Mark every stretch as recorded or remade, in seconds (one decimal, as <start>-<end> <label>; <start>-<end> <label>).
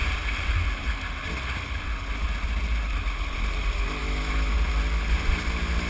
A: 0.0-4.0 recorded; 4.0-4.5 remade; 4.5-5.9 recorded